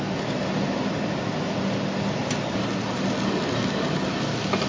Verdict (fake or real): real